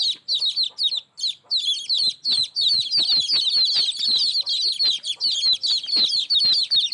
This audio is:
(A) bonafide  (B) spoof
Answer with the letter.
A